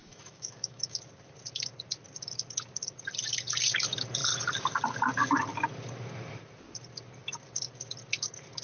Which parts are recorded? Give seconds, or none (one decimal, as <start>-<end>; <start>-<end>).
1.0-8.6